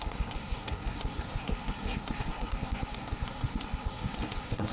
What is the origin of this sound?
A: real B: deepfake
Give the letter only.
B